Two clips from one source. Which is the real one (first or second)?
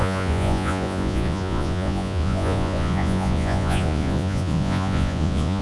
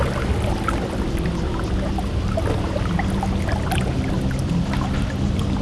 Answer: second